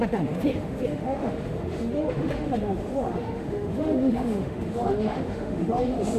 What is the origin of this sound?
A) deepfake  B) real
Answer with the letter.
A